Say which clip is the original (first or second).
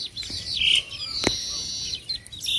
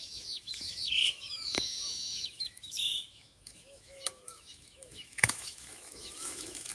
first